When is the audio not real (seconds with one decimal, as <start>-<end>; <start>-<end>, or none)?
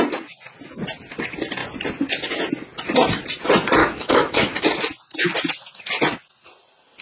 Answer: 3.8-4.5